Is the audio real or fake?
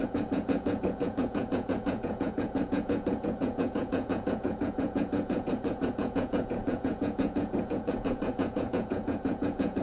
fake